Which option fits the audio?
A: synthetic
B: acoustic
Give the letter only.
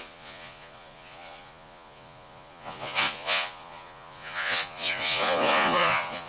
A